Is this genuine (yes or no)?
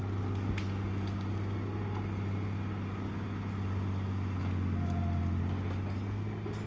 yes